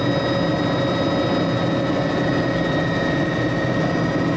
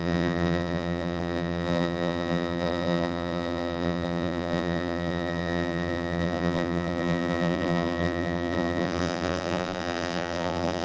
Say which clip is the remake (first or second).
second